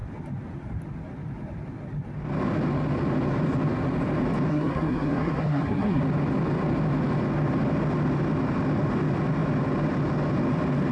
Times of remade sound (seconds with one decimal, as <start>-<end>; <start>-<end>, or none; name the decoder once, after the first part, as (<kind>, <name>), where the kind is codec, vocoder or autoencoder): 4.5-6.0 (codec, SNAC)